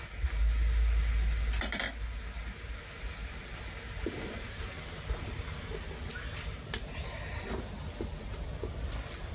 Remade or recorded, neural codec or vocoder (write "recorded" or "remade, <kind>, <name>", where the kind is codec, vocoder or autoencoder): recorded